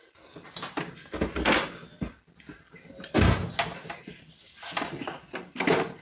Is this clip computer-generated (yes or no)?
no